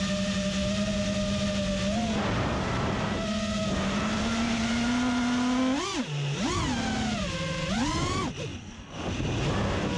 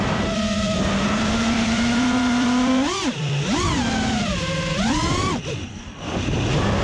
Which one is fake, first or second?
second